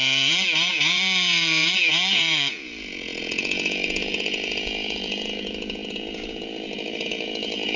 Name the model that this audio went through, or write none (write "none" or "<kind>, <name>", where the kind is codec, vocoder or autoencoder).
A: vocoder, Vocos